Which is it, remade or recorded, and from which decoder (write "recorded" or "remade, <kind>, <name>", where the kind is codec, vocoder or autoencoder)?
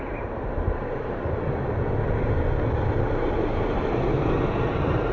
recorded